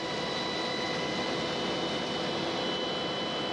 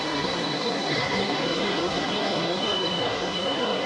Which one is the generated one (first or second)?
second